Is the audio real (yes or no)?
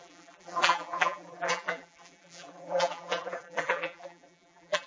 no